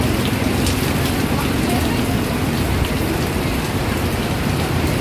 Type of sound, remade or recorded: recorded